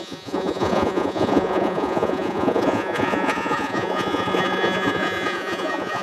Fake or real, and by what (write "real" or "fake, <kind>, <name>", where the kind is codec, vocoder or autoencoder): fake, vocoder, Vocos